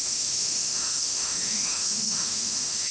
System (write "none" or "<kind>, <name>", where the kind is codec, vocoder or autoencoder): autoencoder, DAC-VAE